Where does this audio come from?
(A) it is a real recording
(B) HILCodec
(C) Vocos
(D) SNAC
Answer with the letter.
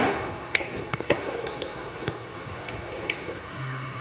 D